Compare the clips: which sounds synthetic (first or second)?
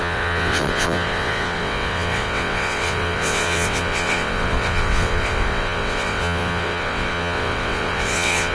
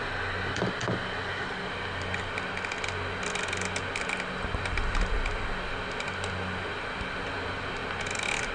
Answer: first